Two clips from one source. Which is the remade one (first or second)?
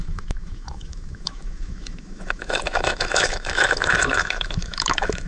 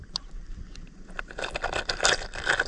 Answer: first